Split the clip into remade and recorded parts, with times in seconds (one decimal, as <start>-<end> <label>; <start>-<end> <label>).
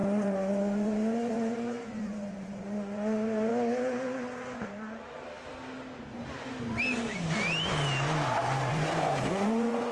0.0-3.5 remade; 3.5-8.7 recorded; 8.7-9.9 remade